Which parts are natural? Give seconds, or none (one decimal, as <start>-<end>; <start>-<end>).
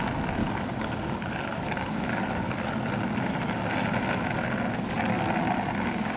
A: 0.0-0.4; 2.9-6.2